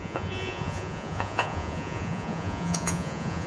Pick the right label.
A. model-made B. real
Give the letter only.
A